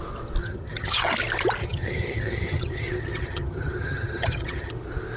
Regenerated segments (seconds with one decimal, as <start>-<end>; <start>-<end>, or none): 0.4-1.1; 1.6-4.7